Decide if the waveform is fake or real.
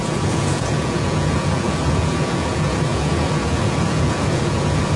fake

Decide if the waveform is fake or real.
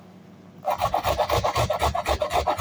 real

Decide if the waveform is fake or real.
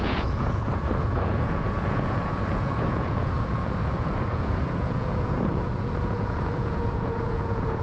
fake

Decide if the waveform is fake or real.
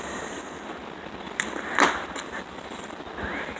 real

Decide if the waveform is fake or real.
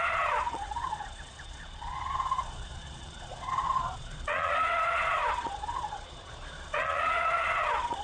fake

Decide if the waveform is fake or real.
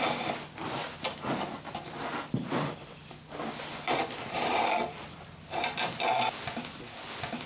real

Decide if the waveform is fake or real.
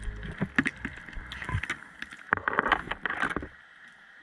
real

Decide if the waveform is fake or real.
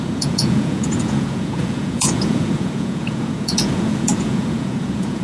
fake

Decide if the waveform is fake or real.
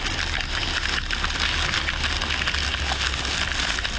real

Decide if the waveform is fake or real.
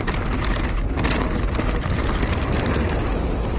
real